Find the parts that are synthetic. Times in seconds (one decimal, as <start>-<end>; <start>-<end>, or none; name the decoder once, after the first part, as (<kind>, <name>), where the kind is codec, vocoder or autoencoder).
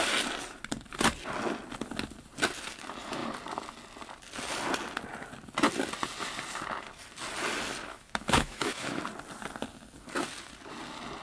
7.9-9.0 (autoencoder, DAC-VAE)